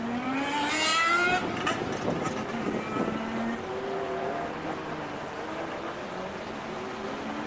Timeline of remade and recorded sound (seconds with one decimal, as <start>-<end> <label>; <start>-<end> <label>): 0.0-7.5 recorded